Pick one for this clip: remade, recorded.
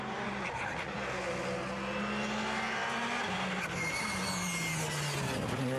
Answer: recorded